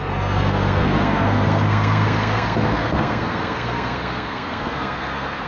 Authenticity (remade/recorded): remade